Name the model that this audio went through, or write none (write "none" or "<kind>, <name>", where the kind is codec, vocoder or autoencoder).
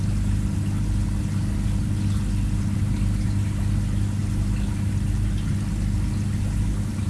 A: none